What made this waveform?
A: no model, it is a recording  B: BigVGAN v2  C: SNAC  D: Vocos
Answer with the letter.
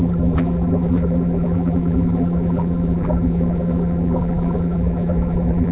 B